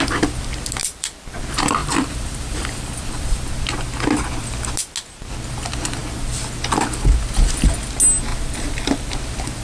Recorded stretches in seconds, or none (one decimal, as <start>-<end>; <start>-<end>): 0.0-0.8; 1.4-1.8; 3.5-8.3; 9.1-9.6